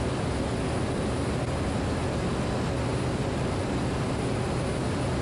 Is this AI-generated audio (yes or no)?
no